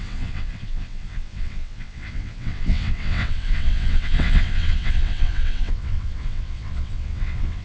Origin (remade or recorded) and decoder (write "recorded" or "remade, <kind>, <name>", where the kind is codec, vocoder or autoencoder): remade, vocoder, WaveNeXt